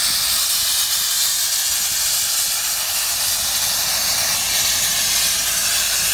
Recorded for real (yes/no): yes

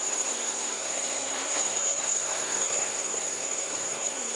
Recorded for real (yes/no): no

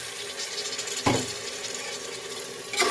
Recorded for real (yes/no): yes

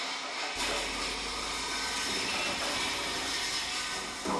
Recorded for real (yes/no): yes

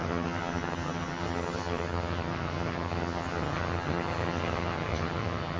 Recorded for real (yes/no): no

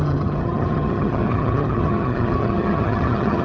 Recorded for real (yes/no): no